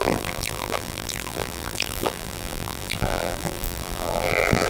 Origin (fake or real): fake